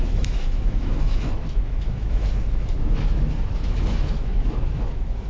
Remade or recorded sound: remade